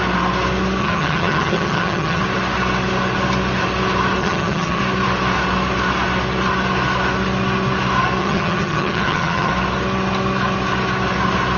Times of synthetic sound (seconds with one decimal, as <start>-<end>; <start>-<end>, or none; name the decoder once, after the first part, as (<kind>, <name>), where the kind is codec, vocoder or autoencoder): 0.8-2.2 (vocoder, HiFi-GAN); 4.2-4.8; 8.2-9.5